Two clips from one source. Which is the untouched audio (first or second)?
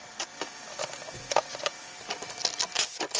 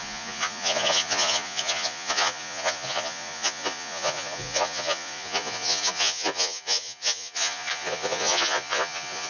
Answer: first